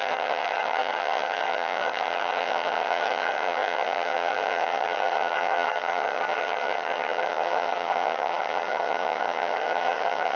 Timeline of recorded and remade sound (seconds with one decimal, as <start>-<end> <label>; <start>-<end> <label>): 0.0-10.4 remade